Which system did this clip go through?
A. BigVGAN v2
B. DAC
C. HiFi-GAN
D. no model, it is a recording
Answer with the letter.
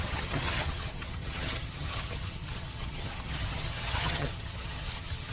C